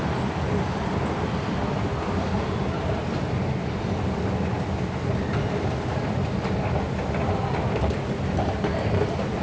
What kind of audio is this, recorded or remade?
recorded